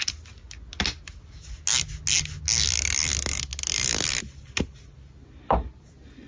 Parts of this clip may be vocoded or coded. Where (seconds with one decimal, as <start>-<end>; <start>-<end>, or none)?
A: none